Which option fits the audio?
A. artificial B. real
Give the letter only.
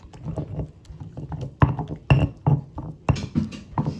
B